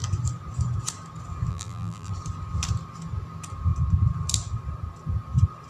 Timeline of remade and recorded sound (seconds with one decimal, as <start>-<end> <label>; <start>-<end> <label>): 0.0-1.5 recorded; 1.5-2.1 remade; 2.1-5.7 recorded